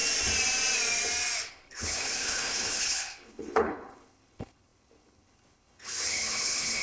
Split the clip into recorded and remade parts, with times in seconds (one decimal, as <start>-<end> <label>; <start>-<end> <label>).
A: 0.0-1.5 recorded; 1.5-6.8 remade